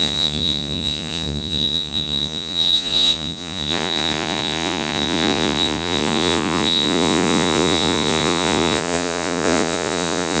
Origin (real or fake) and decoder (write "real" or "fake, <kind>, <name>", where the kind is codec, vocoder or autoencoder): fake, vocoder, Vocos